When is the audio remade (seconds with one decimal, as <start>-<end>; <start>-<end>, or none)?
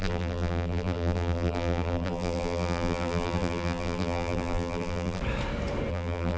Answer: 0.0-5.2; 5.9-6.4